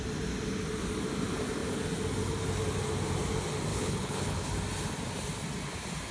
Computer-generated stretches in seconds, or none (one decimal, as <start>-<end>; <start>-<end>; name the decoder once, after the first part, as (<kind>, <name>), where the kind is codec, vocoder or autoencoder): 3.7-4.5 (codec, HILCodec)